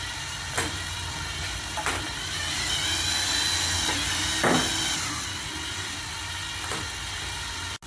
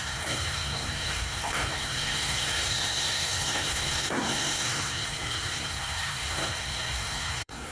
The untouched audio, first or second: first